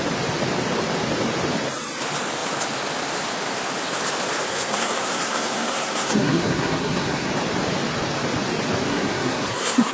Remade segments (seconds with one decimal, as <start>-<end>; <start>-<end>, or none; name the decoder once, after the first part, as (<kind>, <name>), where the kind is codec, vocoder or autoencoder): 4.5-7.3 (codec, SNAC); 8.9-9.9